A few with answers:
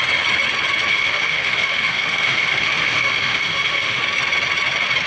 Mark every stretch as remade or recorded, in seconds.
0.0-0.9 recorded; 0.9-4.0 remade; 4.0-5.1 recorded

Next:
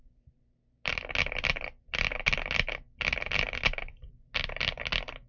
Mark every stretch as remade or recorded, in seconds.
0.0-5.3 recorded

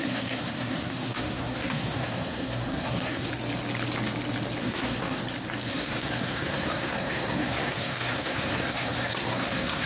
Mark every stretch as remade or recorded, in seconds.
0.0-3.3 remade; 3.3-4.6 recorded; 4.6-5.2 remade; 5.2-5.7 recorded; 5.7-9.9 remade

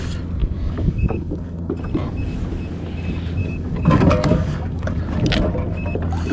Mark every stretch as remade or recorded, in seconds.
0.0-0.4 recorded; 0.4-1.7 remade; 1.7-3.4 recorded; 3.4-5.0 remade; 5.0-6.3 recorded